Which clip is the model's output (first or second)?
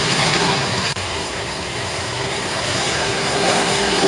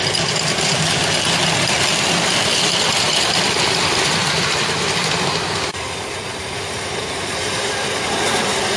first